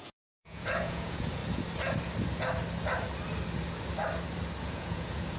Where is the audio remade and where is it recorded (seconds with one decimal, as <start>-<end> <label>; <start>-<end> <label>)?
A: 0.0-1.4 remade; 1.4-4.6 recorded; 4.6-5.4 remade